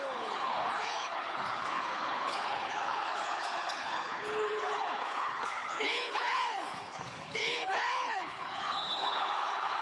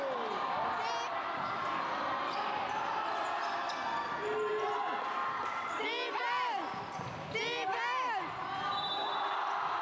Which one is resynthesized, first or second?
first